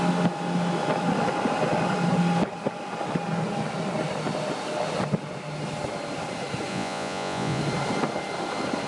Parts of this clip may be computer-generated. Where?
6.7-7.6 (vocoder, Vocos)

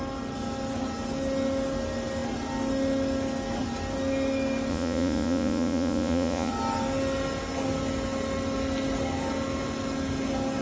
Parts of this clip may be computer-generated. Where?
4.7-6.5 (vocoder, Vocos)

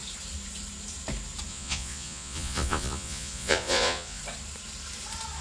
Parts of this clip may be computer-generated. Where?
1.5-4.2 (vocoder, Vocos)

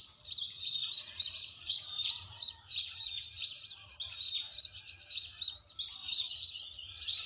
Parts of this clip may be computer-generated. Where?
0.8-3.2 (vocoder, Vocos); 6.0-7.3

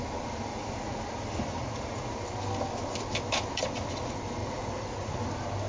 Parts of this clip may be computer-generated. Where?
0.5-1.0 (vocoder, Vocos); 1.5-2.2; 4.4-5.2

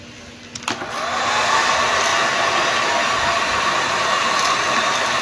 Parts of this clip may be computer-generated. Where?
none

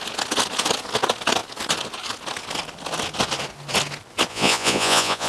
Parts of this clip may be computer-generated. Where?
4.3-5.3 (vocoder, Vocos)